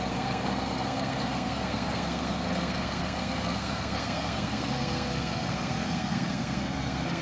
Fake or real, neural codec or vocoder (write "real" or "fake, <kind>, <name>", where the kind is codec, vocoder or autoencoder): fake, codec, SNAC